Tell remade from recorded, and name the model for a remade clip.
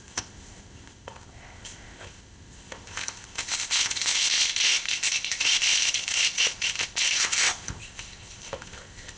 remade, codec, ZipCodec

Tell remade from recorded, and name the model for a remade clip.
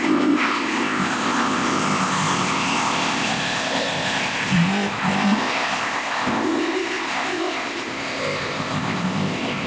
remade, codec, ZipCodec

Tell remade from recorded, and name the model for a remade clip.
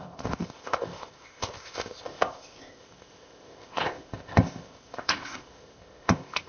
remade, codec, ZipCodec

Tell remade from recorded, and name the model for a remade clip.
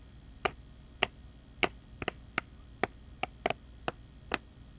recorded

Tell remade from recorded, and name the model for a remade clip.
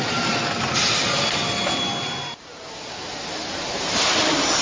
recorded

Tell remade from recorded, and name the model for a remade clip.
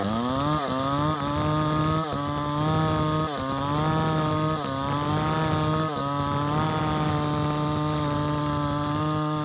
recorded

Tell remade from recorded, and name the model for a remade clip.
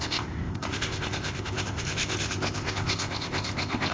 remade, codec, ZipCodec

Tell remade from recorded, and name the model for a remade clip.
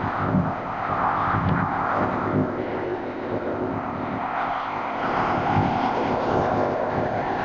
remade, codec, ZipCodec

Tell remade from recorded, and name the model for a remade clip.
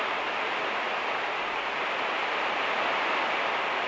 recorded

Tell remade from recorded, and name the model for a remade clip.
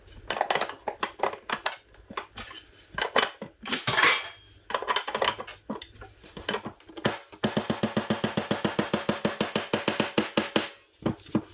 recorded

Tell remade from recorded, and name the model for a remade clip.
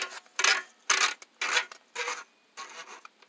recorded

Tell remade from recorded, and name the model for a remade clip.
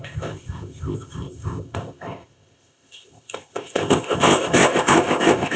remade, codec, ZipCodec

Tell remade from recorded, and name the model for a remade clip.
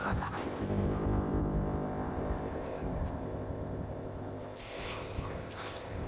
remade, codec, ZipCodec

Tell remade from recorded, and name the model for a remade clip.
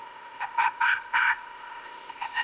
remade, codec, ZipCodec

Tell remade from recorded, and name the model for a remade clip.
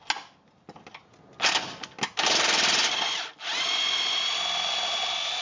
recorded